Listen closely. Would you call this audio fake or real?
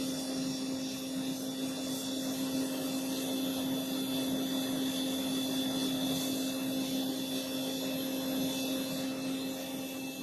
real